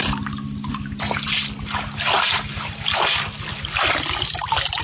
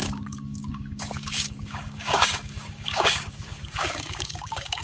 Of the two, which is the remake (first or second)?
second